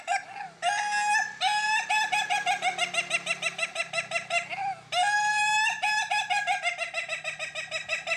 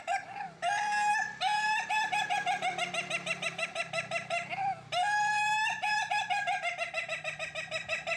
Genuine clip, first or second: first